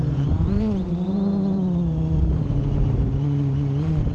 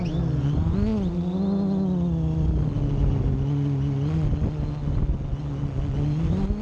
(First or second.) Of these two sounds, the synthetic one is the first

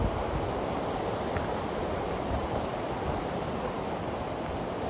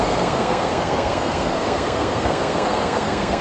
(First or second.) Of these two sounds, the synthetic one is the second